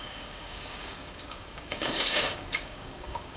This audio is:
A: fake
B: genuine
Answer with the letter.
A